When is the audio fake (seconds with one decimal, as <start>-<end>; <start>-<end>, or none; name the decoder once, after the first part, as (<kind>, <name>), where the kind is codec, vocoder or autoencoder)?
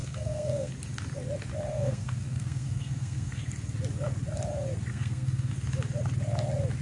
0.0-0.7 (codec, SNAC); 1.7-3.4; 4.9-5.5